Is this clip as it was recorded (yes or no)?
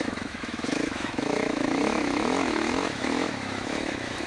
no